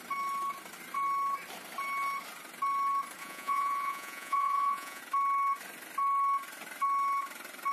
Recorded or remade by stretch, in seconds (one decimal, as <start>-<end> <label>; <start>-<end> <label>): 0.0-3.2 recorded; 3.2-5.0 remade; 5.0-7.7 recorded